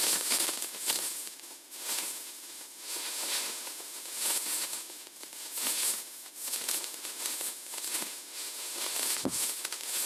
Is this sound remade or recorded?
remade